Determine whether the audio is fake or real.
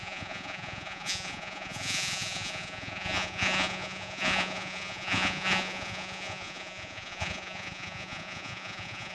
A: fake